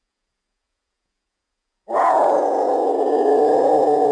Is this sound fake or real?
fake